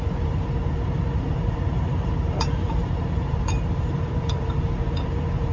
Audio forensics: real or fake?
fake